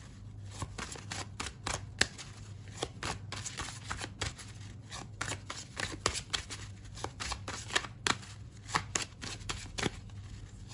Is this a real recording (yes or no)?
yes